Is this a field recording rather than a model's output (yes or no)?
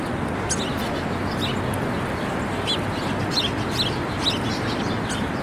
yes